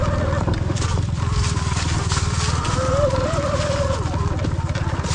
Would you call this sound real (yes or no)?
no